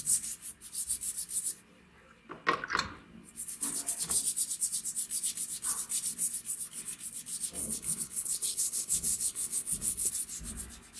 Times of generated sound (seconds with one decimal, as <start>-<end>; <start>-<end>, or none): 7.6-10.1